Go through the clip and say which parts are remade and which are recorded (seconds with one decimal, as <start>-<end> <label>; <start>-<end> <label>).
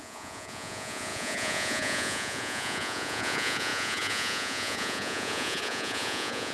0.0-6.5 remade